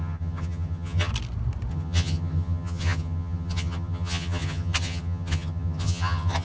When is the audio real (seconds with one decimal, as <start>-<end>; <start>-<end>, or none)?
1.1-1.7